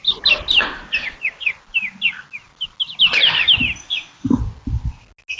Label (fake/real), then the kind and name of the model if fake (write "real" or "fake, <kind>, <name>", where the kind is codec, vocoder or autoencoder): real